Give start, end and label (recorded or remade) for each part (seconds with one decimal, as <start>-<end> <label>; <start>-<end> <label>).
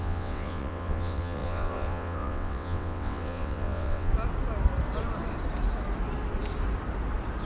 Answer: 0.0-4.1 remade; 4.1-7.5 recorded